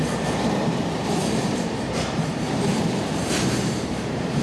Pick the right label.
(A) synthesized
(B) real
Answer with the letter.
A